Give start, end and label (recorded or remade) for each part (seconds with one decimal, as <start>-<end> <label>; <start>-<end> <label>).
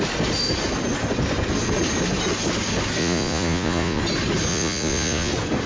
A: 0.0-3.0 recorded; 3.0-4.0 remade; 4.0-4.5 recorded; 4.5-5.3 remade; 5.3-5.7 recorded